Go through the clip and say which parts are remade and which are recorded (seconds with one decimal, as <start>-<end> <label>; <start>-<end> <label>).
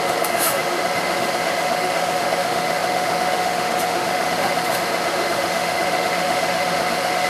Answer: 0.0-7.3 remade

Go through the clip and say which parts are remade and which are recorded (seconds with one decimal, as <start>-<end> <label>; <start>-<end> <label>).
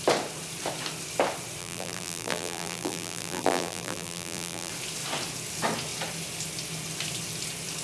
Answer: 0.0-1.6 recorded; 1.6-4.7 remade; 4.7-7.8 recorded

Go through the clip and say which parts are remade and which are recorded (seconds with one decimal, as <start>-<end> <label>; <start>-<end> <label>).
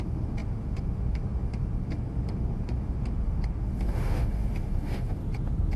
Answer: 0.0-5.2 remade; 5.2-5.8 recorded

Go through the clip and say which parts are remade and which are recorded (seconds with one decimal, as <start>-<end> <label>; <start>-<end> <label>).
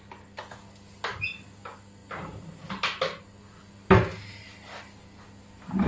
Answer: 0.0-5.9 recorded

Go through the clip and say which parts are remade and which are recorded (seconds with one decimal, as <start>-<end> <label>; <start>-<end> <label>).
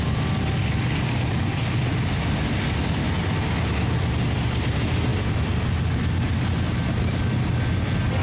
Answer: 0.0-8.2 recorded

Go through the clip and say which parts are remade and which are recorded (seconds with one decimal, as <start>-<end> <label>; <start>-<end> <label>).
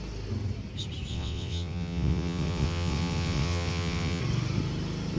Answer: 0.0-1.1 recorded; 1.1-4.2 remade; 4.2-5.2 recorded